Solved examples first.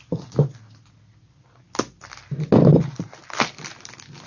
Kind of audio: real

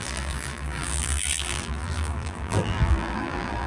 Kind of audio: fake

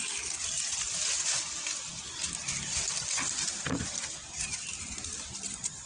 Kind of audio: fake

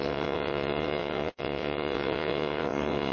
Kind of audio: fake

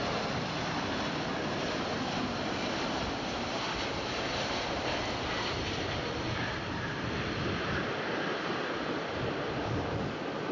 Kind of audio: fake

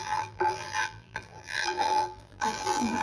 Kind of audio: fake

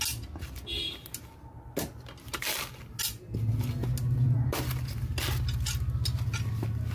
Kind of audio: real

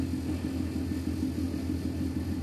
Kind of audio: real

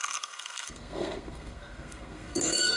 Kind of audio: fake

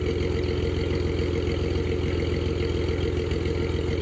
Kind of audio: real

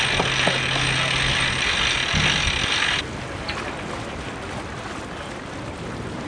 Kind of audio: real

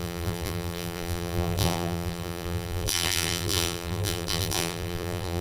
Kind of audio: fake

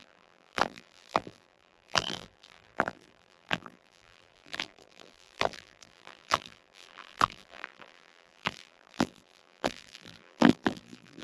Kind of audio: fake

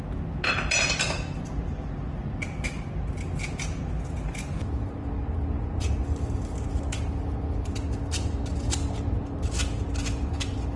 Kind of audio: real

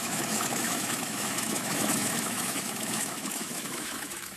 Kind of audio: fake